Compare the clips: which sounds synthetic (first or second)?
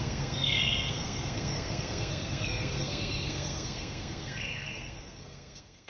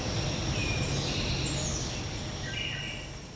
first